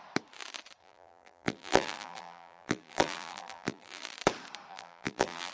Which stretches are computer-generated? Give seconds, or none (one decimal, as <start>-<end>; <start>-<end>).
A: 0.8-4.1; 4.7-5.5